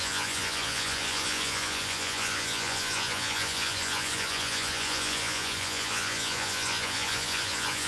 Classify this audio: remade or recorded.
remade